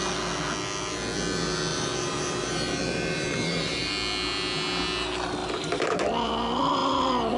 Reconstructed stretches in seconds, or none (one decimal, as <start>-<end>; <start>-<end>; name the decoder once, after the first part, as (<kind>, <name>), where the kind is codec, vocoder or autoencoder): 1.7-3.9 (vocoder, BigVGAN v2)